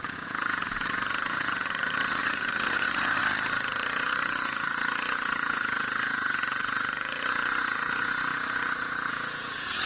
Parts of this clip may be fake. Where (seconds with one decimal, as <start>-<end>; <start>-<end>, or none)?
0.0-9.9